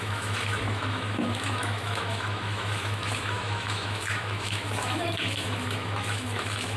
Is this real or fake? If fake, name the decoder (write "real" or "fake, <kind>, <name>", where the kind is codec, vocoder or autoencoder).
fake, autoencoder, DAC-VAE